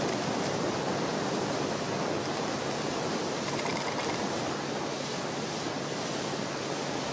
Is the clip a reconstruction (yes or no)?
no